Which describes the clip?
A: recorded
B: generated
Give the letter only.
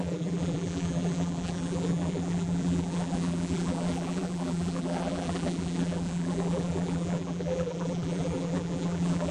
B